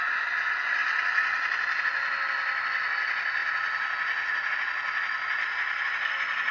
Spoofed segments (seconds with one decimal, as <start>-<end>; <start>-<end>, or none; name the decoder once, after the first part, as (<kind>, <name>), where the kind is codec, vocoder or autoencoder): none